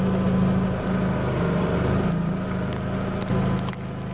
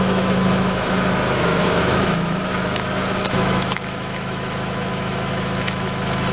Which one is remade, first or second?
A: second